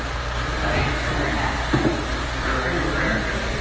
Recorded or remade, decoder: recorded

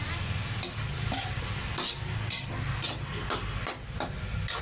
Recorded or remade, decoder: recorded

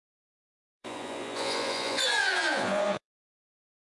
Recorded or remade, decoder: remade, vocoder, Vocos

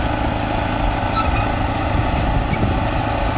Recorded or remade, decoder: recorded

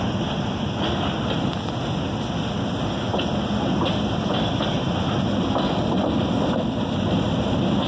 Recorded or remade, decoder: recorded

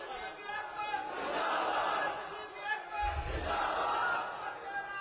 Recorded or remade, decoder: recorded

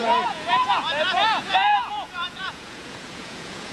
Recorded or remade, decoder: remade, vocoder, Vocos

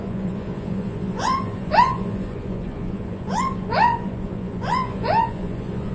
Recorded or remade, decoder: remade, vocoder, Vocos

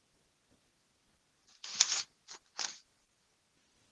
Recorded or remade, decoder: recorded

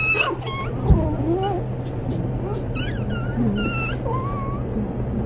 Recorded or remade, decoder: recorded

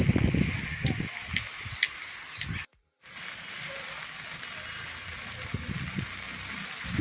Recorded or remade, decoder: recorded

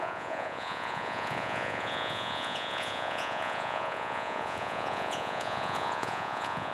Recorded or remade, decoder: remade, vocoder, Vocos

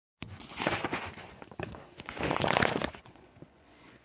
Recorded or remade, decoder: remade, vocoder, Vocos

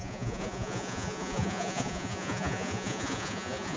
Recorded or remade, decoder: remade, vocoder, Vocos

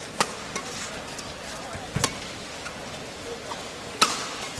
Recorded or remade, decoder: recorded